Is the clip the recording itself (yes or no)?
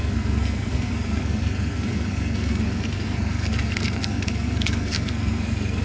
no